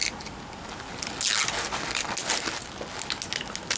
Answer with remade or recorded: recorded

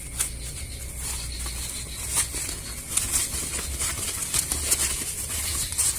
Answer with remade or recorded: recorded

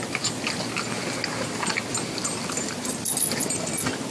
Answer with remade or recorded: recorded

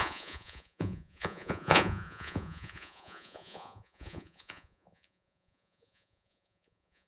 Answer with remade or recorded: remade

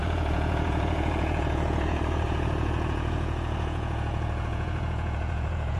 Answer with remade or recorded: remade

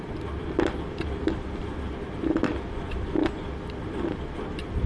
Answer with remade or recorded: recorded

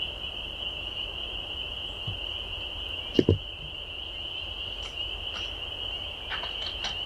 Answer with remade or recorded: recorded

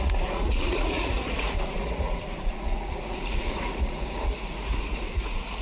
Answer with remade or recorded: remade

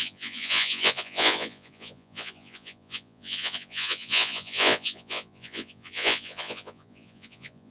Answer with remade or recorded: remade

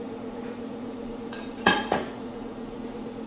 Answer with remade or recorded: remade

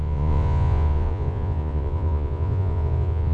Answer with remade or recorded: remade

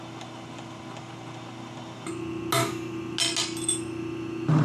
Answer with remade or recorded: recorded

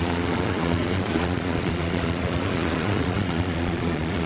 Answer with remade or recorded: remade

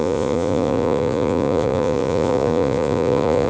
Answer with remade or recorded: remade